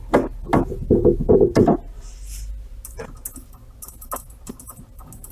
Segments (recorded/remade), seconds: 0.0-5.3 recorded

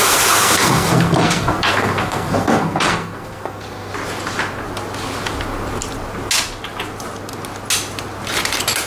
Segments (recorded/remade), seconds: 0.0-3.9 remade; 3.9-8.9 recorded

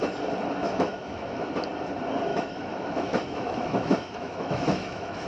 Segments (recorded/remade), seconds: 0.0-0.6 recorded; 0.6-1.5 remade; 1.5-2.3 recorded; 2.3-5.3 remade